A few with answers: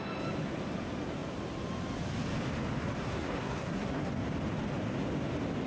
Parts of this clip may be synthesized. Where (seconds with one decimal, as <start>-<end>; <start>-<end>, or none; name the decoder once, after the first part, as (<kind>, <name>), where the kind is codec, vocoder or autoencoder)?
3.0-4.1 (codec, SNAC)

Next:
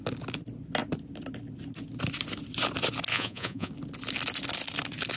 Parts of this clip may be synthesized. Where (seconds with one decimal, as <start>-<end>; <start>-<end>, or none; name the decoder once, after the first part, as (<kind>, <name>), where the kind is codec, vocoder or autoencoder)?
3.1-3.7 (vocoder, Vocos)

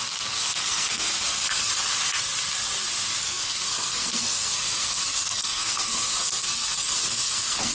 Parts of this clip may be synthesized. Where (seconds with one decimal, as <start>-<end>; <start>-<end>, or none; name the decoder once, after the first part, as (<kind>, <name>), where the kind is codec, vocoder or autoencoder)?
0.0-1.7 (codec, SNAC); 3.2-7.7

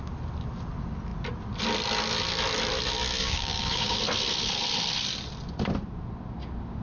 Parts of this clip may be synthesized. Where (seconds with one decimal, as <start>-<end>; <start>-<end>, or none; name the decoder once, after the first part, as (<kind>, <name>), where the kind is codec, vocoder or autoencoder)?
3.2-4.0 (codec, DAC)

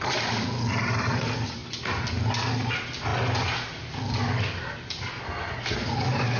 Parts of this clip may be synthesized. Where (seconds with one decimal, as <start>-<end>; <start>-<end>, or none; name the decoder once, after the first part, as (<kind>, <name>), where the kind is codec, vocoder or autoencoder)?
none